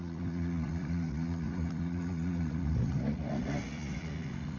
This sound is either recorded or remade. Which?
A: remade